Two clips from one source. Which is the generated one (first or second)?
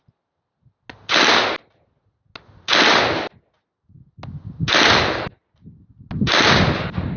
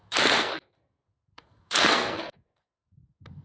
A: second